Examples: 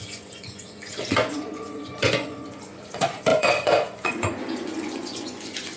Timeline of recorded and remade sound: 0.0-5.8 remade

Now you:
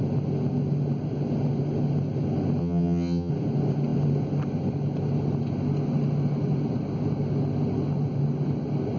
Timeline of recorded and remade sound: 0.0-2.6 recorded; 2.6-3.3 remade; 3.3-9.0 recorded

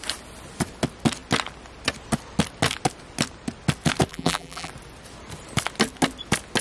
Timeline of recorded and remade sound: 0.0-4.1 recorded; 4.1-4.7 remade; 4.7-6.6 recorded

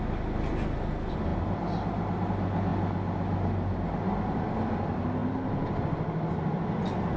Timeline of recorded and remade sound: 0.0-7.2 recorded

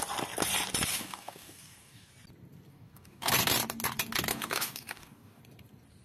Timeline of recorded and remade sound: 0.0-0.9 recorded; 0.9-2.1 remade; 2.1-2.7 recorded; 2.7-3.3 remade; 3.3-4.3 recorded; 4.3-5.4 remade; 5.4-6.0 recorded

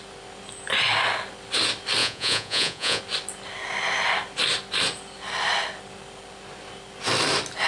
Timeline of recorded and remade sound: 0.0-2.0 recorded; 2.0-3.0 remade; 3.0-7.7 recorded